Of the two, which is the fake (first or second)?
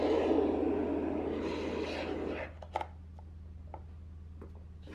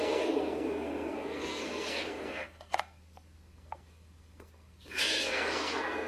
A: second